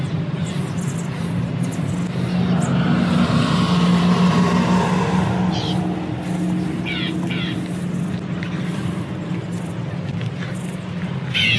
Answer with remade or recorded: recorded